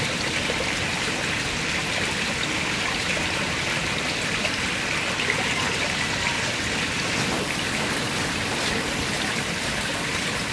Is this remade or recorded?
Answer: recorded